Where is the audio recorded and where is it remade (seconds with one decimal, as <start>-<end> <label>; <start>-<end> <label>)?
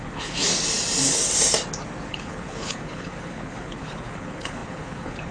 0.0-0.5 remade; 0.5-2.1 recorded; 2.1-5.3 remade